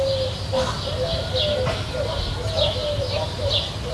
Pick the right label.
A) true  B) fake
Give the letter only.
A